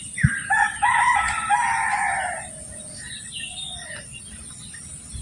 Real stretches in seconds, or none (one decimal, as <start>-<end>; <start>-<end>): 1.1-4.2